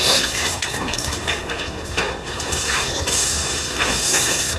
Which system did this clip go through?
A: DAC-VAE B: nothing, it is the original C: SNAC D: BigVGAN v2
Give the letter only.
C